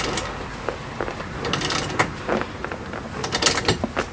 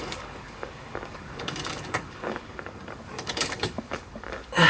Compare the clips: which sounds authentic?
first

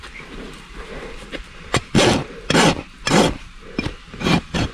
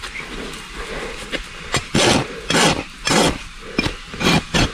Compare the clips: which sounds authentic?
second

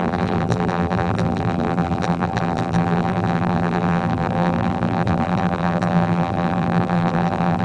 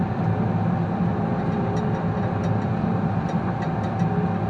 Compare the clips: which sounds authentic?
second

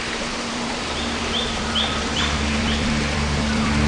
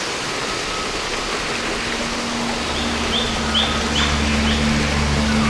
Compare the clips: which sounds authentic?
second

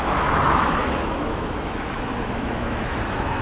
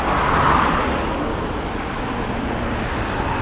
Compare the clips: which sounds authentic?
second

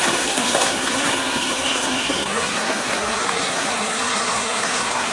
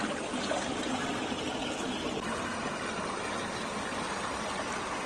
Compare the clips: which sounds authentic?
second